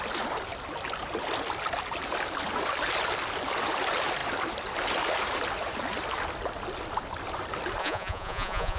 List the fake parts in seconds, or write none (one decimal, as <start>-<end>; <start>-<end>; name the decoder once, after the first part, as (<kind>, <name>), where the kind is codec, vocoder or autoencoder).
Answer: 7.8-8.8 (vocoder, Vocos)